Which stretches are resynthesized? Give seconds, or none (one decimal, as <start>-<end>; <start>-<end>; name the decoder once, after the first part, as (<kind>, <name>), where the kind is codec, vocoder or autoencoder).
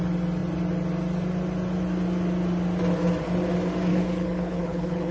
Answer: 3.9-5.1 (codec, HILCodec)